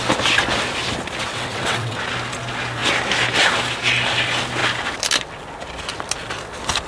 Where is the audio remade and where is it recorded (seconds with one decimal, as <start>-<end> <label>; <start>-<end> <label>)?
0.0-1.3 recorded; 1.3-2.0 remade; 2.0-6.9 recorded